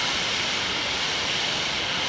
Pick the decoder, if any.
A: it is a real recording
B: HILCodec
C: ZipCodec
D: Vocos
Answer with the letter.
A